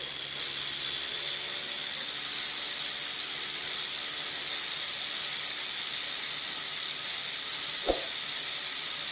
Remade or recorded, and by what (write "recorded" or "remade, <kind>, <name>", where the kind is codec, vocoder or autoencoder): recorded